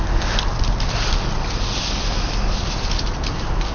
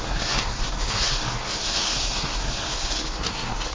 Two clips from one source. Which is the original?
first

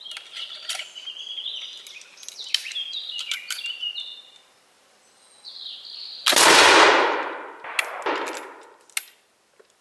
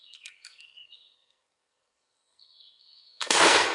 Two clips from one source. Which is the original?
first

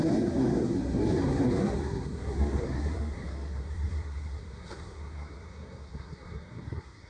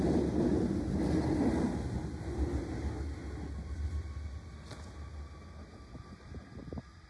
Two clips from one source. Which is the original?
second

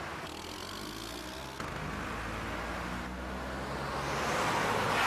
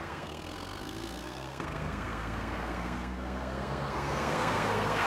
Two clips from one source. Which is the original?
first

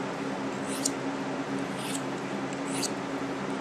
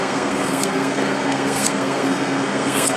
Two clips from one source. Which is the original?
first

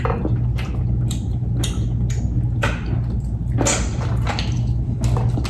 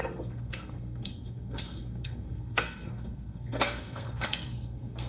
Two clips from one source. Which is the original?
first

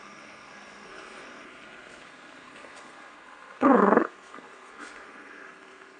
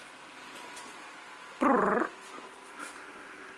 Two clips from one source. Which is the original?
second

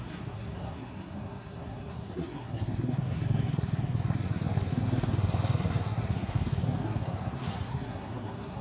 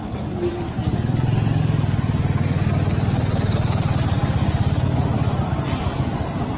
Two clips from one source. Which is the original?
second